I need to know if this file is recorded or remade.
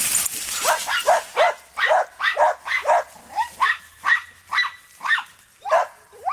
recorded